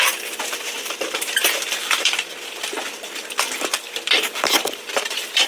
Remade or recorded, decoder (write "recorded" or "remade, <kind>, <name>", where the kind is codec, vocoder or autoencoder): remade, vocoder, BigVGAN v2